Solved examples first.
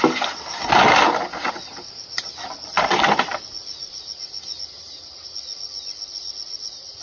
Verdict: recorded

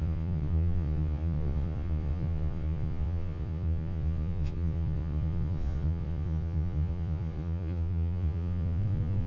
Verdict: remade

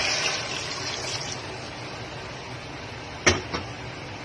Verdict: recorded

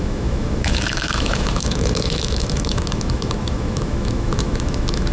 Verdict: remade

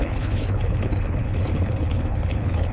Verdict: remade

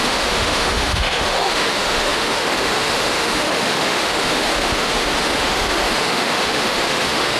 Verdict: remade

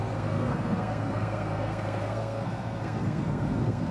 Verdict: remade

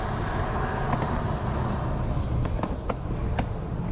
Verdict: recorded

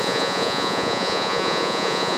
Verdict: remade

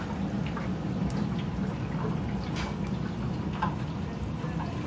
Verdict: recorded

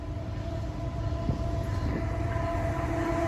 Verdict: remade